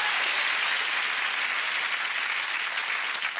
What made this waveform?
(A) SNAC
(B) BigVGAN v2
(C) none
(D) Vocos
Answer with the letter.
C